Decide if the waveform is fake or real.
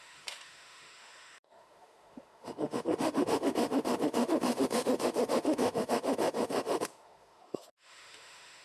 fake